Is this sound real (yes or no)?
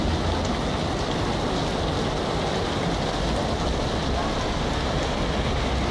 yes